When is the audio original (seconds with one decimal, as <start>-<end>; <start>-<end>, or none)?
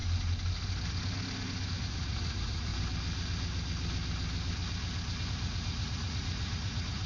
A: 0.0-1.8; 2.7-5.3